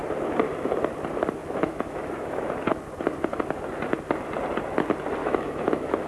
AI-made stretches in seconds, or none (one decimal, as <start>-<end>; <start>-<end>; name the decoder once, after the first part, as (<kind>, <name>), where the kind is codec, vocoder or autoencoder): 1.4-2.5 (autoencoder, DAC-VAE); 5.2-6.1